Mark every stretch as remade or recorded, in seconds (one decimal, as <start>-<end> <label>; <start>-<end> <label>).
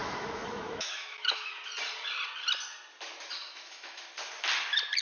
0.0-1.5 remade; 1.5-3.4 recorded; 3.4-4.0 remade; 4.0-5.0 recorded